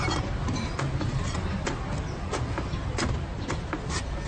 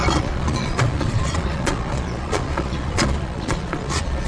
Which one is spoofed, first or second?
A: second